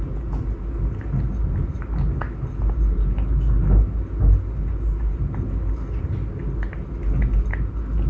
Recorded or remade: recorded